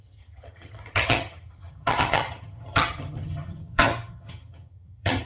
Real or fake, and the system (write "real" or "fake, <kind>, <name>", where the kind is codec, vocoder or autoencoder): fake, vocoder, HiFi-GAN